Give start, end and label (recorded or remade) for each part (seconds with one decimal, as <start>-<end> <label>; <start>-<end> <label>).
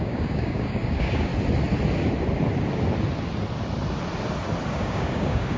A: 0.0-1.3 remade; 1.3-4.7 recorded; 4.7-5.6 remade